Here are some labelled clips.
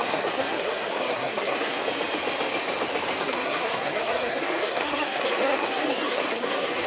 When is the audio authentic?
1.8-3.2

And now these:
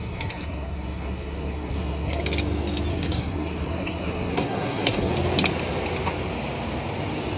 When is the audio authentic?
2.2-2.9; 5.1-7.4